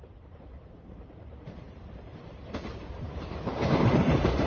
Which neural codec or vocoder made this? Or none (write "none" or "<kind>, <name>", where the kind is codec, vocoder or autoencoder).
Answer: vocoder, BigVGAN v2